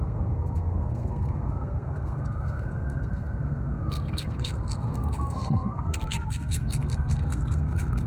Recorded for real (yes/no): no